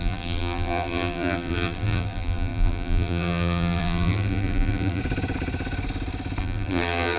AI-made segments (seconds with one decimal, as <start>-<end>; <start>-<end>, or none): 0.0-5.0; 6.4-7.2